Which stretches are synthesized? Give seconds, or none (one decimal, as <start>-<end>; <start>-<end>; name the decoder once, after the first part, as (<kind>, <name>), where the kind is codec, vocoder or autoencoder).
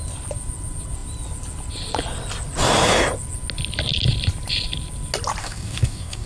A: 5.4-6.3 (codec, DAC)